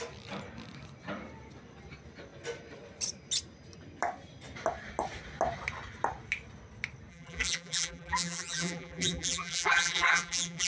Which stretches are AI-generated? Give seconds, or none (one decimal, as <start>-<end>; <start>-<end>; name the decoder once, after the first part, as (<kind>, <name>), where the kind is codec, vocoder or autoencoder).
7.1-10.7 (vocoder, BigVGAN v2)